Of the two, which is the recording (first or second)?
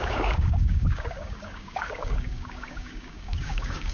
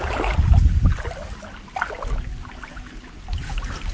second